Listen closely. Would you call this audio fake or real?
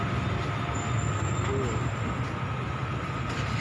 real